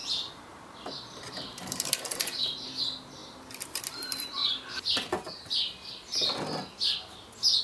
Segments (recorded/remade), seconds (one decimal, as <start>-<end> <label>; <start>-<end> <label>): 0.0-1.0 recorded; 1.0-4.4 remade; 4.4-7.6 recorded